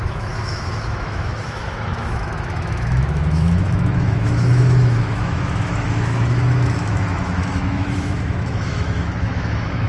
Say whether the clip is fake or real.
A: fake